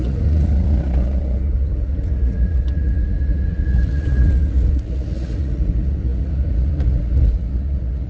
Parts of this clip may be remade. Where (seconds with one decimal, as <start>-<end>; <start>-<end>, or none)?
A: 0.0-8.1